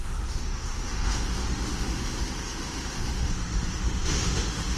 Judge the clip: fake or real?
fake